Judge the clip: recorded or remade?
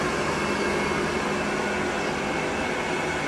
recorded